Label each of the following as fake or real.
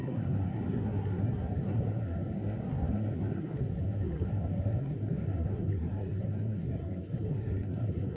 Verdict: fake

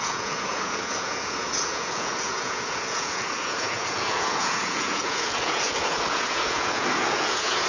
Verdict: fake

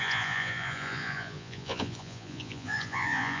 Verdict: fake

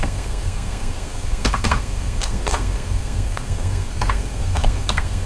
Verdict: fake